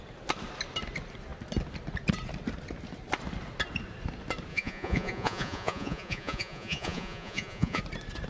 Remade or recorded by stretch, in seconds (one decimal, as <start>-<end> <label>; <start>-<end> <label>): 0.0-4.5 recorded; 4.5-7.8 remade; 7.8-8.3 recorded